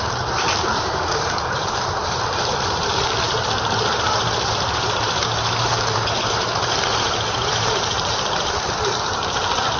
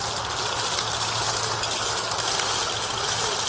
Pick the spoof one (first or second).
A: first